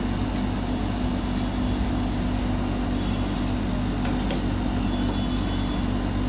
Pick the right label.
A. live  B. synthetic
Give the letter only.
A